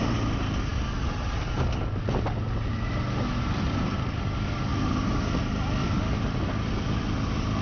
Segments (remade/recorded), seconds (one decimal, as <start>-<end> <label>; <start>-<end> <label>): 0.0-7.6 recorded